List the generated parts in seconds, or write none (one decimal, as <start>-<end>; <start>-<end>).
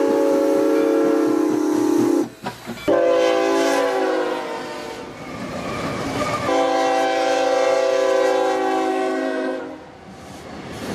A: 8.9-9.6